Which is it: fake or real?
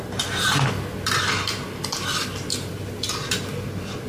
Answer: fake